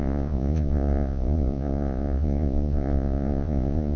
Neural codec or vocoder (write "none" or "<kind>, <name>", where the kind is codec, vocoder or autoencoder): vocoder, Vocos